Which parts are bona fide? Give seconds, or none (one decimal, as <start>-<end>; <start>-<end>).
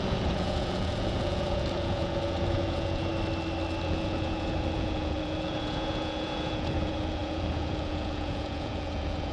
3.1-3.8